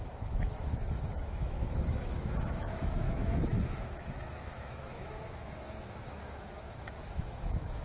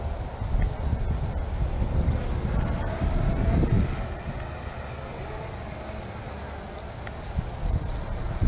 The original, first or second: second